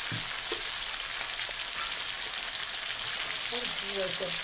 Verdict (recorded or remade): recorded